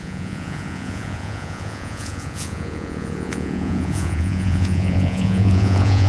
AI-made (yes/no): yes